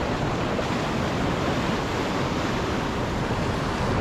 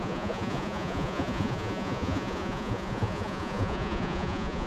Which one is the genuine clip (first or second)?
first